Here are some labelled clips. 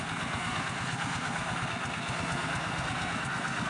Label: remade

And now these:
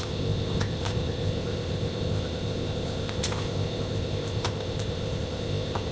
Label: remade